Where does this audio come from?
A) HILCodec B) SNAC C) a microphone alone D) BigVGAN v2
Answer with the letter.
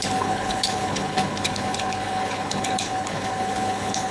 A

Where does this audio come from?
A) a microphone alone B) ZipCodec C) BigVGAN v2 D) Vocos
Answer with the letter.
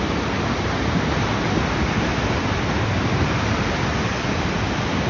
A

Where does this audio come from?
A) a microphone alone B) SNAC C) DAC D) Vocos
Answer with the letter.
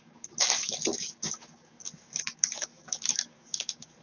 C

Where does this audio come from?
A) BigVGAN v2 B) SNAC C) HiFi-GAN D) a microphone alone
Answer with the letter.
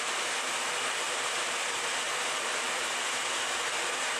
A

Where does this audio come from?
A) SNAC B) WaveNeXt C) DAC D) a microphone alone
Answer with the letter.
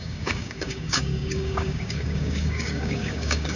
C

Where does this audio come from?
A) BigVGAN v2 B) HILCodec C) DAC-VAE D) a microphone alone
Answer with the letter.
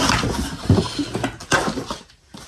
D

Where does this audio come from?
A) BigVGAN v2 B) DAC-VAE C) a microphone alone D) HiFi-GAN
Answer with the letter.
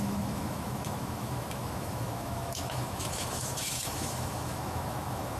B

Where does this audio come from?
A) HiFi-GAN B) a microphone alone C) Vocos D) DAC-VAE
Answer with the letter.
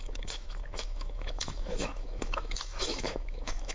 D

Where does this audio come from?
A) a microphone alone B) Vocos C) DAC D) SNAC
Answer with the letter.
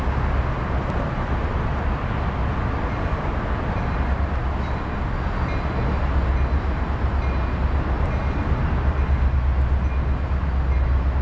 A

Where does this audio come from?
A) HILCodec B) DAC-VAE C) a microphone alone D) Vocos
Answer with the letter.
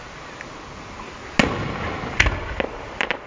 C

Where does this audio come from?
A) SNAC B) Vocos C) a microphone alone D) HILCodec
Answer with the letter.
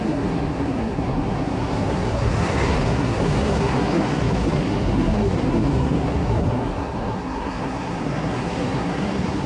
A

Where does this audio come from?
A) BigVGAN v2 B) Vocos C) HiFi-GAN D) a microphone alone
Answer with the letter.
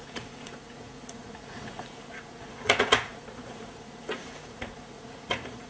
B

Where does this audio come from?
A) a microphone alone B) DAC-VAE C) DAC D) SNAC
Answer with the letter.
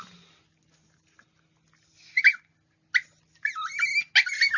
A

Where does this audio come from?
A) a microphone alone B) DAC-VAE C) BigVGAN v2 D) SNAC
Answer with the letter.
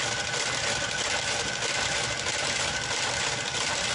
A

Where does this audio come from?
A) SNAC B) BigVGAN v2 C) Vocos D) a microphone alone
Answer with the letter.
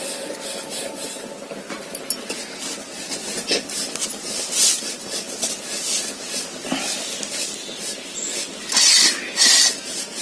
D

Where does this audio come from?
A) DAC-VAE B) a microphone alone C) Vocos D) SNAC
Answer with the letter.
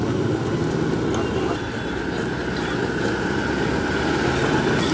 B